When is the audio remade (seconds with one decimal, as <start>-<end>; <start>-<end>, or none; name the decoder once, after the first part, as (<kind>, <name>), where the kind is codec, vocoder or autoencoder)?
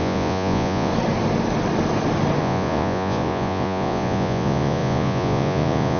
0.0-0.9 (vocoder, Vocos); 2.4-6.0